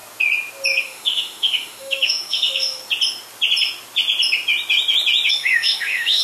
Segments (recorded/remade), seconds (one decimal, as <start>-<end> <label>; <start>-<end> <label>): 0.0-0.8 recorded; 0.8-2.8 remade; 2.8-5.3 recorded; 5.3-6.2 remade